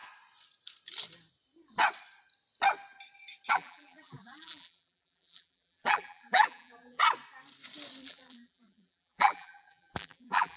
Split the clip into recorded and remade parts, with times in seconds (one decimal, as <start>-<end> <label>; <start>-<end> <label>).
0.0-3.5 recorded; 3.5-7.0 remade; 7.0-8.0 recorded; 8.0-10.6 remade